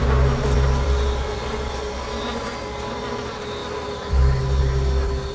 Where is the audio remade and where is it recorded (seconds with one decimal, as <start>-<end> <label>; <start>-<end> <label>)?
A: 0.0-5.3 recorded